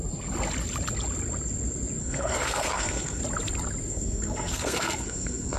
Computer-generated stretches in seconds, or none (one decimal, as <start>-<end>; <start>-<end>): 2.0-3.2; 3.9-5.6